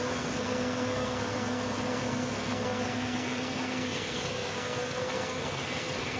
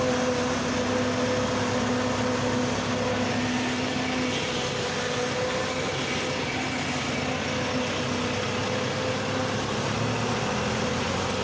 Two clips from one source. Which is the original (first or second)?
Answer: second